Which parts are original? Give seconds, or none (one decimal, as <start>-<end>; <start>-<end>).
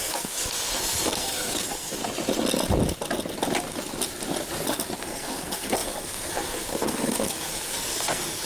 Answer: 2.0-5.0